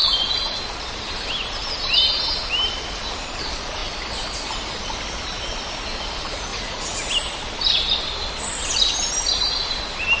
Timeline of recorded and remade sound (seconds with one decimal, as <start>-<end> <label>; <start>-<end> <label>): 0.0-0.6 remade; 0.6-6.5 recorded; 6.5-7.1 remade; 7.1-10.2 recorded